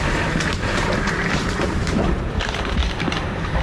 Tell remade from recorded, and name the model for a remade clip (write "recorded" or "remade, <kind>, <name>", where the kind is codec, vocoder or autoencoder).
remade, vocoder, BigVGAN v2